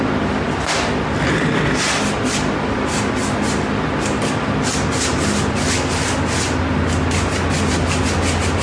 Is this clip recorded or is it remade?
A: recorded